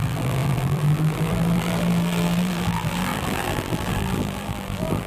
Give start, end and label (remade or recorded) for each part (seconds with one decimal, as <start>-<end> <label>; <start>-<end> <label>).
0.0-5.1 remade

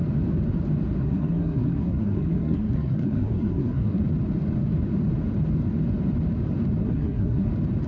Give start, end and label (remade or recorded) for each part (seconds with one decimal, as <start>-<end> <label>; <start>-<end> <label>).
0.0-1.0 recorded; 1.0-4.0 remade; 4.0-6.8 recorded; 6.8-7.5 remade; 7.5-7.9 recorded

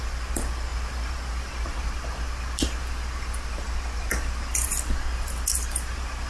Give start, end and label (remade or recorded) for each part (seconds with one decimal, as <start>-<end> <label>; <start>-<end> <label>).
0.0-6.3 recorded